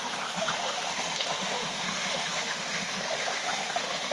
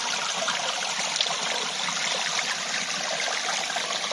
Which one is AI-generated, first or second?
first